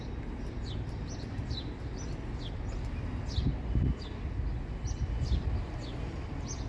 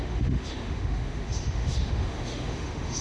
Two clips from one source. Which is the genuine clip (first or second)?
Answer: first